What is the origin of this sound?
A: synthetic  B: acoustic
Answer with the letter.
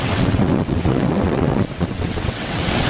A